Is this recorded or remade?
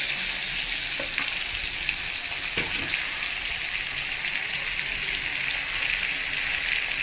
recorded